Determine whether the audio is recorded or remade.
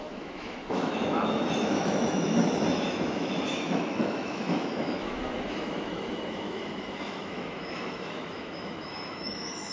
remade